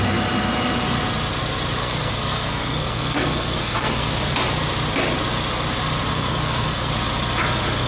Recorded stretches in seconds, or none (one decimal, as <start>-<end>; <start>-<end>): 0.0-1.8; 4.1-6.1; 6.9-7.9